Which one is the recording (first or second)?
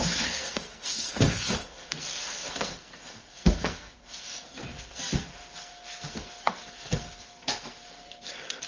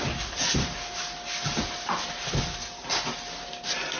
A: second